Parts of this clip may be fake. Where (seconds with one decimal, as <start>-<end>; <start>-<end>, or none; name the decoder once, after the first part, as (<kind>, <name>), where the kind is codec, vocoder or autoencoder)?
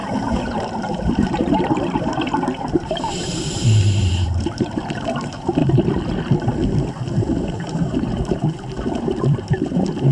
0.0-5.6 (vocoder, BigVGAN v2); 7.4-10.1